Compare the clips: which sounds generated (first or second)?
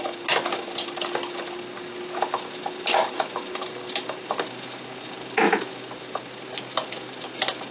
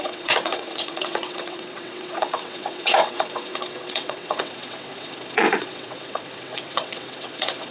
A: second